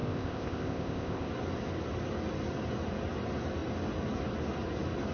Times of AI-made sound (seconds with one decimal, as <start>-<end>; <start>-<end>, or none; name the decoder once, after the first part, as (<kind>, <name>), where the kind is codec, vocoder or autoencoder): 0.0-1.3 (codec, ZipCodec)